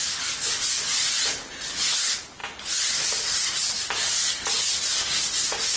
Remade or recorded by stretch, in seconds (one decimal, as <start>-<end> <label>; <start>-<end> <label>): 0.0-5.8 recorded